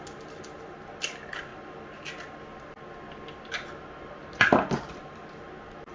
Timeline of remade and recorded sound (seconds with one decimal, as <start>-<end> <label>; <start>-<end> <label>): 0.0-5.9 recorded